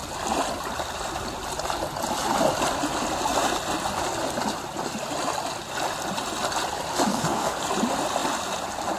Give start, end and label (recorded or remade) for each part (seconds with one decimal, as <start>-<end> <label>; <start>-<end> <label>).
0.0-7.1 recorded; 7.1-7.6 remade; 7.6-9.0 recorded